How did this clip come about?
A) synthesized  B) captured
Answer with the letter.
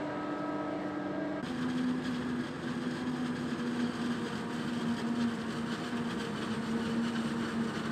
B